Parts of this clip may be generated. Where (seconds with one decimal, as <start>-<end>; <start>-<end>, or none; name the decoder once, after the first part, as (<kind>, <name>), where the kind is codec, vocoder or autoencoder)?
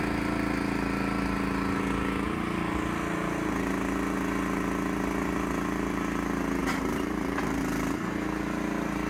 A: 6.6-7.6 (vocoder, BigVGAN v2)